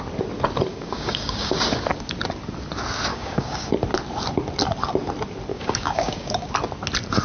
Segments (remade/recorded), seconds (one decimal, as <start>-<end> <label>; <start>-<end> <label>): 0.0-0.7 recorded; 0.7-1.5 remade; 1.5-3.1 recorded; 3.1-3.7 remade; 3.7-5.5 recorded; 5.5-6.5 remade; 6.5-7.2 recorded